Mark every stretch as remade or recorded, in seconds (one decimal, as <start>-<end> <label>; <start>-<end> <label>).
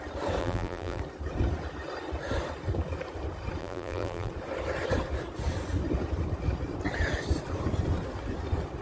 0.0-0.4 recorded; 0.4-1.0 remade; 1.0-3.6 recorded; 3.6-4.3 remade; 4.3-8.8 recorded